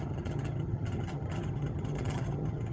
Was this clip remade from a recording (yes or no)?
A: yes